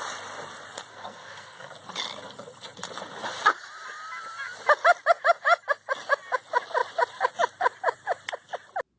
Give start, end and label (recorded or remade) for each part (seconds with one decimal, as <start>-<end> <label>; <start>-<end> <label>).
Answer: 0.0-0.9 recorded; 0.9-1.7 remade; 1.7-9.0 recorded